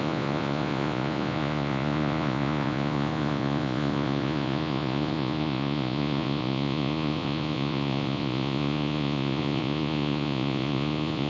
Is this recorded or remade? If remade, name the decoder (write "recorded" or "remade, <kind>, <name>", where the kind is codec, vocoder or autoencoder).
remade, vocoder, Vocos